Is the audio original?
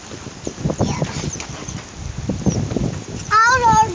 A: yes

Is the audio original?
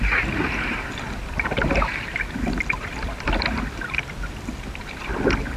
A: no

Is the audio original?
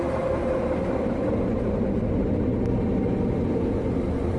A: yes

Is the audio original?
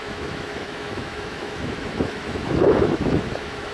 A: no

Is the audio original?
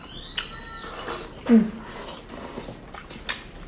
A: yes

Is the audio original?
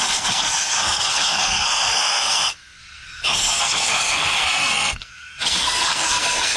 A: no